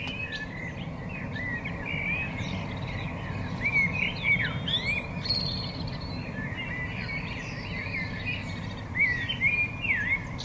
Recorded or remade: recorded